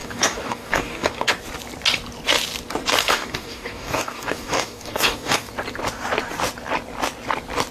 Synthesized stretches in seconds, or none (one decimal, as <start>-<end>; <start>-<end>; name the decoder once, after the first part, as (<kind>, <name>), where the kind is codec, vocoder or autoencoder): 0.0-1.3 (codec, DAC); 3.0-5.5